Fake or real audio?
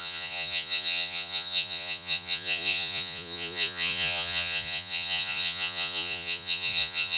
fake